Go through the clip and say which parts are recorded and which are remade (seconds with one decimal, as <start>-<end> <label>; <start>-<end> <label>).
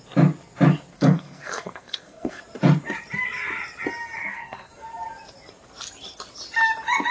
0.0-0.9 recorded; 0.9-2.4 remade; 2.4-4.2 recorded; 4.2-4.7 remade; 4.7-7.1 recorded